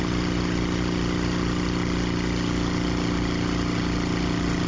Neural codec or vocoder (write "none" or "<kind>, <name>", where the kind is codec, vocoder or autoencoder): none